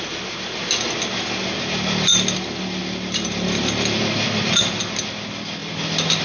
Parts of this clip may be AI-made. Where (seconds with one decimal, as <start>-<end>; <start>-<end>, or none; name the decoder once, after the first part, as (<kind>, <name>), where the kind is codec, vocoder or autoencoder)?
none